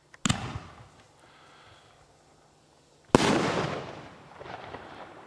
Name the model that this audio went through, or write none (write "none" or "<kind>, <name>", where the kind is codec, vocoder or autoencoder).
none